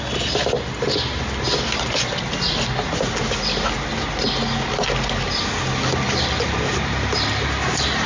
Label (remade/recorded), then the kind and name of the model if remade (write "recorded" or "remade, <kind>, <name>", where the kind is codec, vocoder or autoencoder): recorded